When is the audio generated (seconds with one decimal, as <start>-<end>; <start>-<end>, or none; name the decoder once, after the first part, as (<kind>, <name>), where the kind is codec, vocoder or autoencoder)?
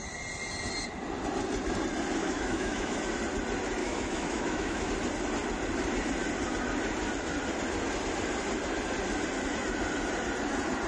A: 2.2-3.1 (autoencoder, DAC-VAE); 3.8-4.9